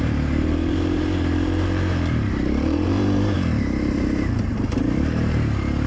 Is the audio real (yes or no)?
no